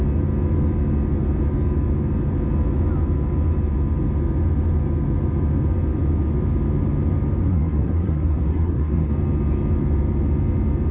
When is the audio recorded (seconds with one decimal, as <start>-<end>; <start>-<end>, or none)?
0.0-7.4; 9.1-10.9